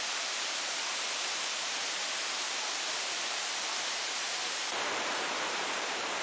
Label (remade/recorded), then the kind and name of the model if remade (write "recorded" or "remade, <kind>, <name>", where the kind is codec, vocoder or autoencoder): remade, vocoder, BigVGAN v2